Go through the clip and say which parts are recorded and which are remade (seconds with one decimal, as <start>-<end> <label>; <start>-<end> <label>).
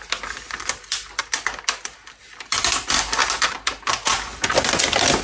0.0-3.2 recorded; 3.2-3.9 remade; 3.9-4.3 recorded; 4.3-4.8 remade; 4.8-5.2 recorded